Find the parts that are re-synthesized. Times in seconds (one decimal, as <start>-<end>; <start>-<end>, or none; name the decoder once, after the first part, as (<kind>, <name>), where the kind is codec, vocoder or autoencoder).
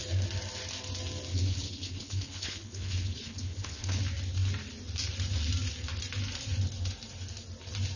1.3-4.0 (codec, HILCodec)